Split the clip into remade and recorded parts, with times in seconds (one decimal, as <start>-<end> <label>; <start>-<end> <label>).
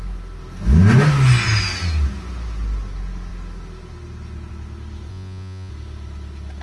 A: 0.0-5.1 recorded; 5.1-5.7 remade; 5.7-6.6 recorded